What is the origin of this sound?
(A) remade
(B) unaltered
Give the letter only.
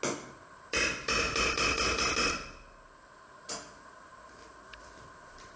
B